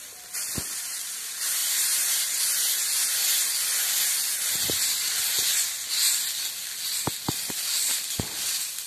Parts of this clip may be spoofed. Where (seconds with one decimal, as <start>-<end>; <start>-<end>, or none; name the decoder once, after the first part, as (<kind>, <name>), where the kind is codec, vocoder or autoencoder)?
1.6-2.4 (vocoder, BigVGAN v2)